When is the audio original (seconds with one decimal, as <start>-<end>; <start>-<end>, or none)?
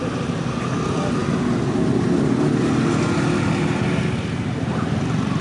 0.0-5.4